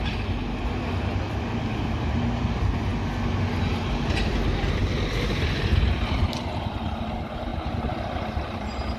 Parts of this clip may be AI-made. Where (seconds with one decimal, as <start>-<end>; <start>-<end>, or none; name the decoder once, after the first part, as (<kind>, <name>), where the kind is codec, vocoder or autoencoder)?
4.8-6.4 (vocoder, BigVGAN v2); 7.5-9.0